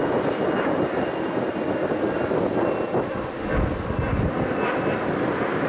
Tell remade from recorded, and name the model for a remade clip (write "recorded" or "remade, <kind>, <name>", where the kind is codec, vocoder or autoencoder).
recorded